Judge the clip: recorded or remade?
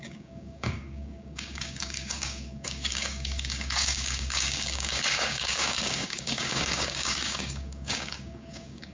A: remade